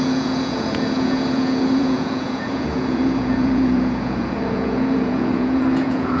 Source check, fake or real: fake